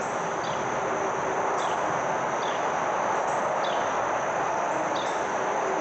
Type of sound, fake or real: real